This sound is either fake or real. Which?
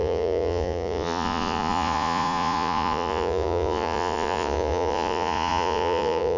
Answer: fake